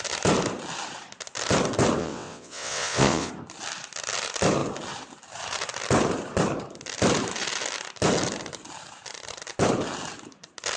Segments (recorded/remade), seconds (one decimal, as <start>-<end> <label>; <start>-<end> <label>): 0.0-2.0 recorded; 2.0-3.3 remade; 3.3-10.8 recorded